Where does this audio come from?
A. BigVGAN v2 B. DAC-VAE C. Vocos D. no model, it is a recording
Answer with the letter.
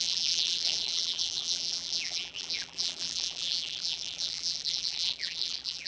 A